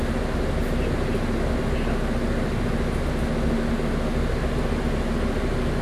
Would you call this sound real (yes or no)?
yes